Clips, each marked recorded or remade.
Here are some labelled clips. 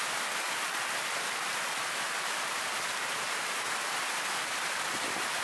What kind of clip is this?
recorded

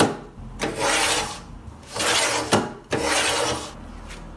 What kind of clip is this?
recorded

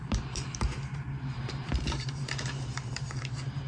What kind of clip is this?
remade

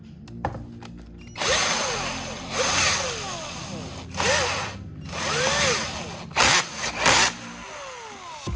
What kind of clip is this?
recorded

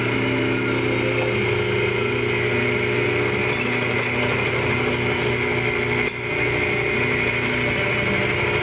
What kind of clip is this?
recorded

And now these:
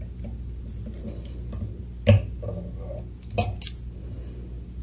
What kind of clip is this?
recorded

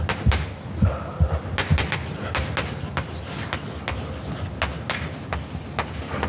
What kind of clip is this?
recorded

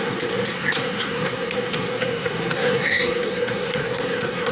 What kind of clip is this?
remade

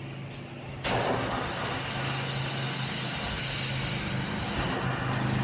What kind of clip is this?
recorded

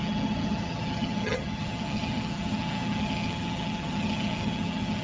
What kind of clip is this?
remade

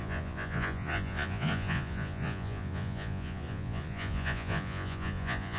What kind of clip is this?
remade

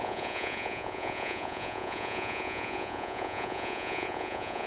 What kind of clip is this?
remade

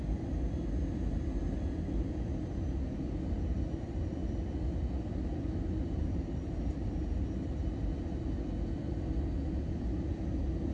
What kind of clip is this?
recorded